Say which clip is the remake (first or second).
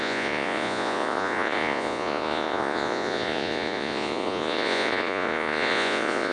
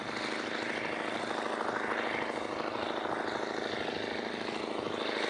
first